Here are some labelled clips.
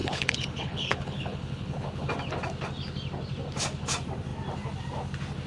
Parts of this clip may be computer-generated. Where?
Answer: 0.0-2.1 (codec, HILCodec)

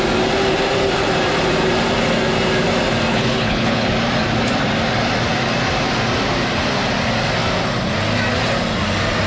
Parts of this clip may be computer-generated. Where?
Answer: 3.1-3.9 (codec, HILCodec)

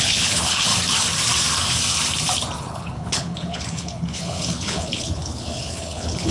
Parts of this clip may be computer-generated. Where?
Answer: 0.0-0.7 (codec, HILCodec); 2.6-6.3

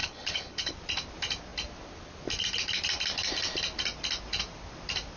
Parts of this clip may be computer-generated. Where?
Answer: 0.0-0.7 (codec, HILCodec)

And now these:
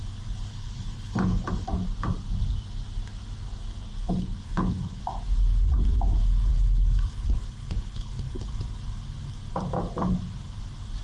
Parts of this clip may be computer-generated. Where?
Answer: 0.5-1.5 (codec, HILCodec); 3.9-5.0; 6.5-8.5

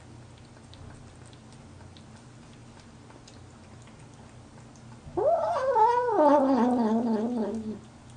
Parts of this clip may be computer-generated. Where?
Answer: none

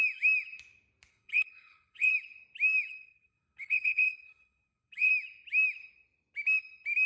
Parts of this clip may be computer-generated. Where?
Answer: 1.1-2.1 (codec, HILCodec); 2.9-5.1